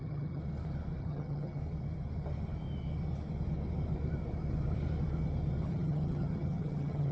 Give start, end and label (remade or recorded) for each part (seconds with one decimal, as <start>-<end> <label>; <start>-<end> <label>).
0.0-0.4 remade; 0.4-1.0 recorded; 1.0-1.6 remade; 1.6-5.7 recorded; 5.7-7.1 remade